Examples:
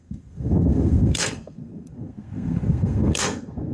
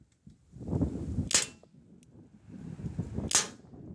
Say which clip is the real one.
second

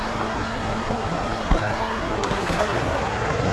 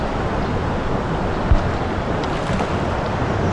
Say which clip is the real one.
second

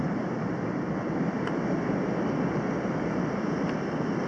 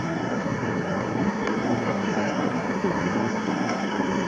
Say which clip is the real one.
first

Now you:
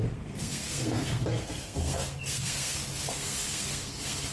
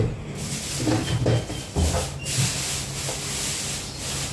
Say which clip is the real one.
second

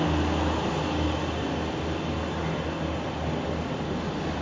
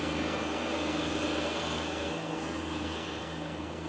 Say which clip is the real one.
first